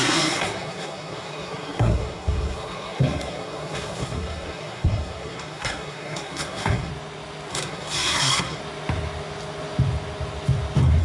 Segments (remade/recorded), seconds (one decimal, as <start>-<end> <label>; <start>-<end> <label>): 0.0-6.9 remade; 6.9-7.5 recorded; 7.5-8.6 remade; 8.6-11.0 recorded